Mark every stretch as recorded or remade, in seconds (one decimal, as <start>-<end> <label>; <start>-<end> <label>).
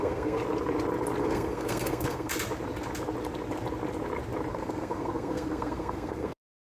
0.0-0.4 remade; 0.4-1.2 recorded; 1.2-2.3 remade; 2.3-4.5 recorded; 4.5-6.7 remade